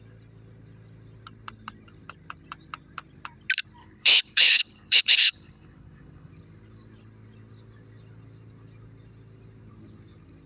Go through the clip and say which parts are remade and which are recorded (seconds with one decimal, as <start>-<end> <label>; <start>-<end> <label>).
0.0-3.8 recorded; 3.8-6.3 remade; 6.3-10.5 recorded

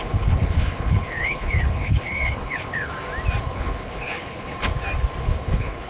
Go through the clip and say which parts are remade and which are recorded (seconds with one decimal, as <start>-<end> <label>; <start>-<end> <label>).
0.0-2.9 remade; 2.9-3.4 recorded; 3.4-4.7 remade; 4.7-5.2 recorded; 5.2-5.9 remade

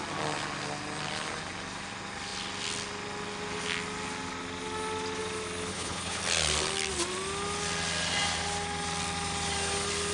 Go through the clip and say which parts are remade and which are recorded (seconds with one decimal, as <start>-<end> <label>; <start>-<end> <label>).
0.0-5.7 recorded; 5.7-6.2 remade; 6.2-10.1 recorded

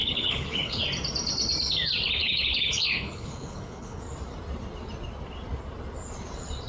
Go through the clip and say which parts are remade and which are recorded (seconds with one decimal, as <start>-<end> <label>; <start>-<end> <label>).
0.0-0.8 remade; 0.8-2.2 recorded; 2.2-4.0 remade; 4.0-6.7 recorded